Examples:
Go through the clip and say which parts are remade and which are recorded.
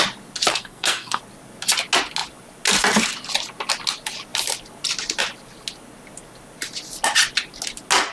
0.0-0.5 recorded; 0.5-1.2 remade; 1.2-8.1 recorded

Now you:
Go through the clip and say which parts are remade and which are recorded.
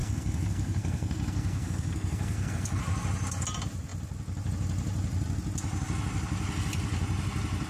0.0-2.8 remade; 2.8-7.7 recorded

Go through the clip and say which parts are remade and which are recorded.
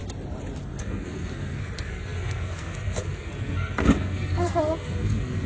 0.0-0.6 recorded; 0.6-5.5 remade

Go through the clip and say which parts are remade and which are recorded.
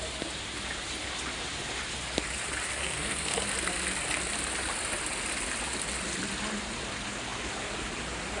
0.0-2.8 recorded; 2.8-3.4 remade; 3.4-8.4 recorded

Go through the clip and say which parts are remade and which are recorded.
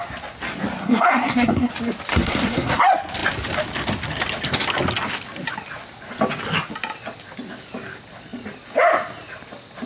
0.0-0.8 recorded; 0.8-1.7 remade; 1.7-2.1 recorded; 2.1-2.8 remade; 2.8-9.9 recorded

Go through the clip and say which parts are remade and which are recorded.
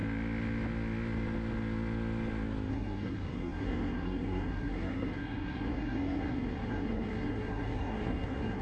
0.0-2.7 recorded; 2.7-8.6 remade